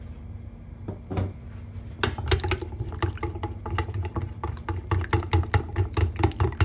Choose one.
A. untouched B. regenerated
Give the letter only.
A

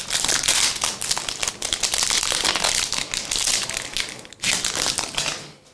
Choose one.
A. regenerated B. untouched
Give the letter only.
B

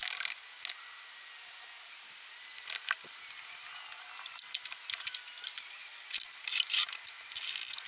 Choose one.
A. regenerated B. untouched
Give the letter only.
B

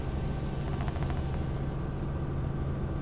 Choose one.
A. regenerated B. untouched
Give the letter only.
B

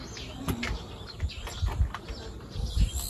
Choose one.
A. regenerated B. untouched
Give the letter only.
B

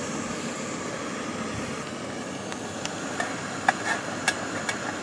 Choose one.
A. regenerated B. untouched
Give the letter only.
B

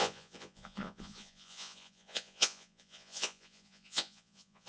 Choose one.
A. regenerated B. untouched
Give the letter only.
A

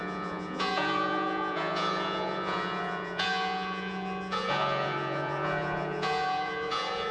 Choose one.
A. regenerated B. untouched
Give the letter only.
A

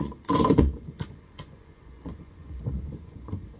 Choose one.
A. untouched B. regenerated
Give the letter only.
B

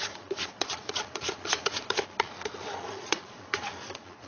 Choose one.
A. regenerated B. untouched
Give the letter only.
A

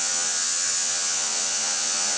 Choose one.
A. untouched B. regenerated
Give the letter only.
B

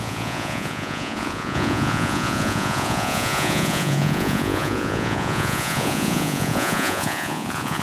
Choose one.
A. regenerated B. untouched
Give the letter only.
A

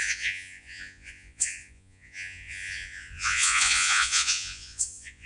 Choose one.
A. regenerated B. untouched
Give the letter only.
A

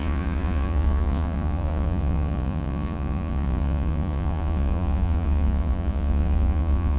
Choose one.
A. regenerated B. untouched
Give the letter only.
A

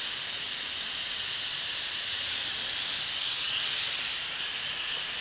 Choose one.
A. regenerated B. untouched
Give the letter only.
B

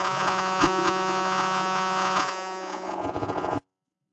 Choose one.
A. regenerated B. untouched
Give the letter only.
A